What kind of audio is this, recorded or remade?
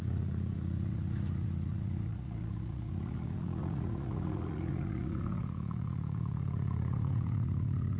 remade